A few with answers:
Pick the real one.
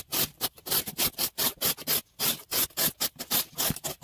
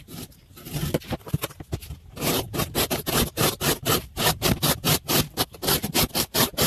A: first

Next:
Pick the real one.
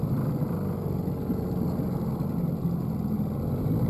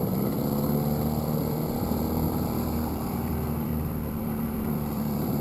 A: first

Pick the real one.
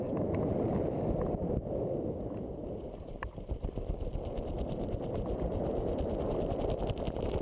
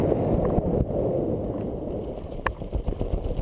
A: second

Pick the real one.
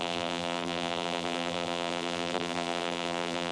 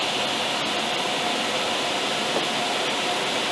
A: second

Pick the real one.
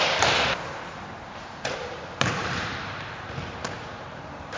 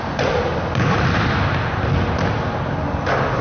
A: second